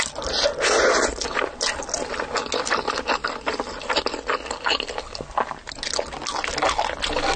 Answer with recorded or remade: recorded